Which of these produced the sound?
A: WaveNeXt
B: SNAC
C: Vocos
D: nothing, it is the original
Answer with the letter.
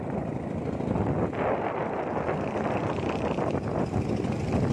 D